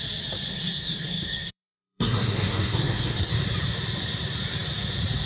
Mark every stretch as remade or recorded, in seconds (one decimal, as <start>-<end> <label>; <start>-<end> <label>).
0.0-0.5 recorded; 0.5-3.3 remade; 3.3-5.3 recorded

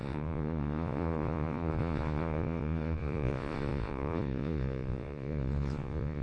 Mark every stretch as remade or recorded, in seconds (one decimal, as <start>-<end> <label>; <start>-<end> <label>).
0.0-6.2 remade

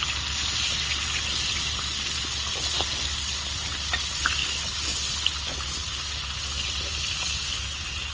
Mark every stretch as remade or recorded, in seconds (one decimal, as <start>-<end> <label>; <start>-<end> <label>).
0.0-8.1 recorded

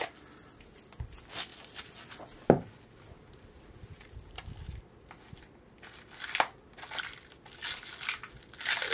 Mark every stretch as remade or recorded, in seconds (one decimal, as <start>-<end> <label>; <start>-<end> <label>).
0.0-8.9 recorded

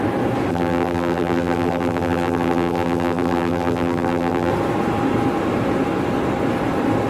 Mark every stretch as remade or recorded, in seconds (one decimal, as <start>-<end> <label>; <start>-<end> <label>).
0.0-0.5 recorded; 0.5-4.5 remade; 4.5-7.1 recorded

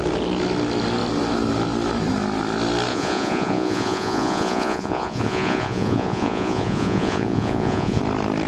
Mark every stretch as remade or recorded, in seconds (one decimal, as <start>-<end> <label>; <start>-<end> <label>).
0.0-2.9 recorded; 2.9-8.0 remade; 8.0-8.5 recorded

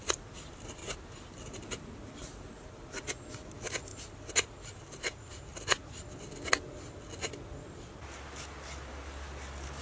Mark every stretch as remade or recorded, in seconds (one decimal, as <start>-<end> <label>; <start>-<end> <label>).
0.0-9.8 recorded